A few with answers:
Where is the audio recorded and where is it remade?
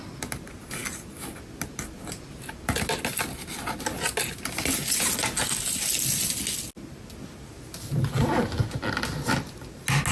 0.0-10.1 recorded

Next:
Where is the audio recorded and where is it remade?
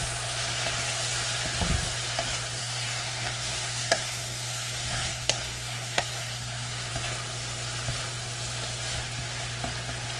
0.0-2.6 recorded; 2.6-6.9 remade; 6.9-10.2 recorded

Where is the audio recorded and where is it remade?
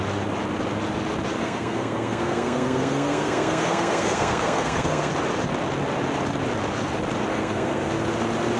0.0-1.4 recorded; 1.4-5.1 remade; 5.1-7.3 recorded; 7.3-7.9 remade; 7.9-8.6 recorded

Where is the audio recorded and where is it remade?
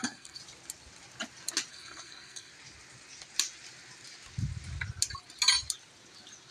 0.0-0.4 remade; 0.4-1.7 recorded; 1.7-2.5 remade; 2.5-6.5 recorded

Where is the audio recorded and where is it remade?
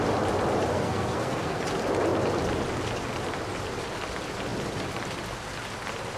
0.0-0.7 recorded; 0.7-1.6 remade; 1.6-6.2 recorded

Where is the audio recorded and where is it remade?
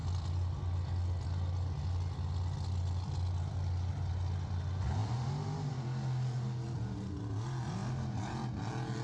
0.0-9.0 recorded